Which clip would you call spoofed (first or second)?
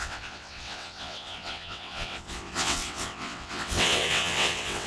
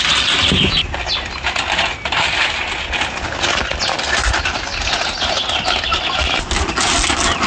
first